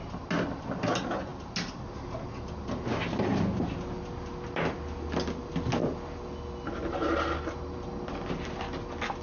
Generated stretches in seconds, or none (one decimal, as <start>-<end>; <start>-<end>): none